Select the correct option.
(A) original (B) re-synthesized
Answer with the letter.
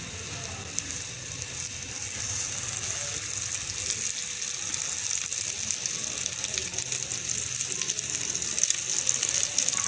A